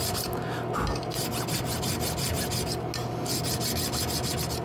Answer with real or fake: real